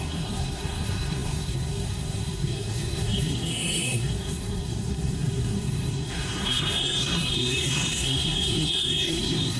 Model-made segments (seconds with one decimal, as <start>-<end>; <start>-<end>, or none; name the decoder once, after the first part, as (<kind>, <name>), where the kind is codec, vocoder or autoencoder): 0.0-9.6 (codec, SNAC)